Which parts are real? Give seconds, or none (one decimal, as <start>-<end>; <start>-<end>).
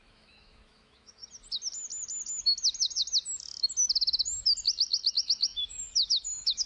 1.2-5.1